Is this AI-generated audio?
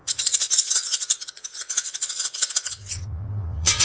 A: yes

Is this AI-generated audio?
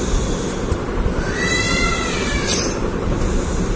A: no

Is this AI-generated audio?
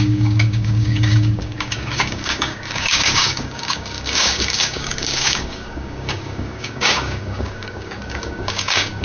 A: yes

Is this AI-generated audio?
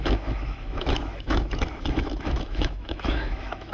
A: yes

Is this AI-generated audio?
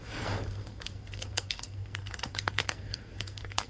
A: yes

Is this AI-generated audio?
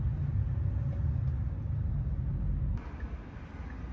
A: no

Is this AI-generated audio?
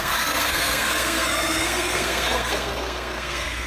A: yes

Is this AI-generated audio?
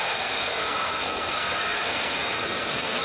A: yes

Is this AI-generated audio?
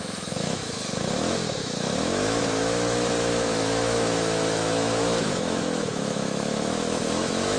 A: yes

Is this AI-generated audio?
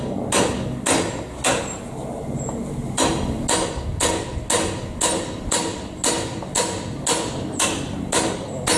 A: no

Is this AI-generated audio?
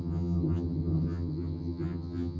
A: yes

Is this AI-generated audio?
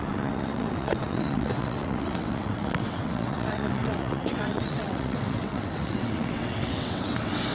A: yes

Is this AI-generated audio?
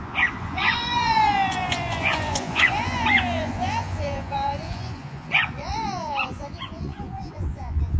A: yes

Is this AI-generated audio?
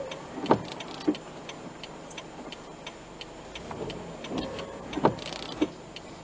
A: no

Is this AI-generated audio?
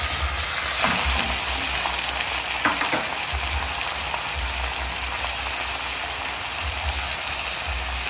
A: no